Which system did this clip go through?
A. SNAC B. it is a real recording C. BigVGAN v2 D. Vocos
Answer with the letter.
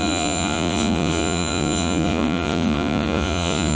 D